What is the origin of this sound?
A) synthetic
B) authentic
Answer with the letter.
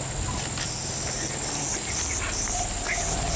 B